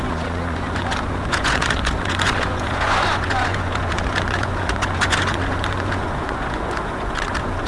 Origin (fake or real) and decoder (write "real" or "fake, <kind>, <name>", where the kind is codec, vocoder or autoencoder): fake, vocoder, Vocos